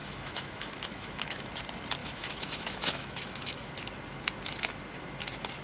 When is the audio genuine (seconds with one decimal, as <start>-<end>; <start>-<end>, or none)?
1.5-2.0; 3.7-5.6